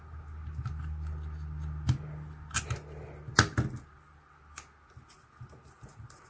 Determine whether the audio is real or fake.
real